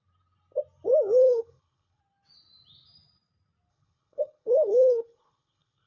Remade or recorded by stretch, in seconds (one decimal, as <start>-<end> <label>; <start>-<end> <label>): 0.0-1.2 recorded; 1.2-2.0 remade; 2.0-3.7 recorded; 3.7-5.9 remade